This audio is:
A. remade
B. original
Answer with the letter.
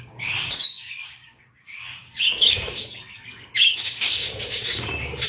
A